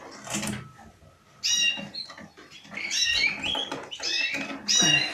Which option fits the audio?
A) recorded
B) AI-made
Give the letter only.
A